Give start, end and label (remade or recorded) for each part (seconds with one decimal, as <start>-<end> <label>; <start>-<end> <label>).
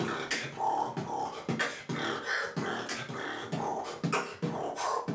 0.0-5.1 recorded